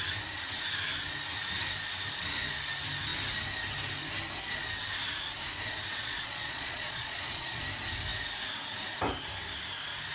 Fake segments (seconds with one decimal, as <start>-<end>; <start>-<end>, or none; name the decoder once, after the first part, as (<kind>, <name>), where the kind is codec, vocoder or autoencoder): 6.0-7.6 (vocoder, Vocos)